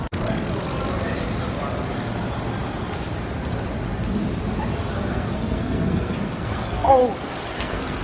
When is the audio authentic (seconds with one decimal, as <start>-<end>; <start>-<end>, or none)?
0.5-5.1; 7.0-7.6